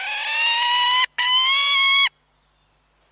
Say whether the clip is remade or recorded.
recorded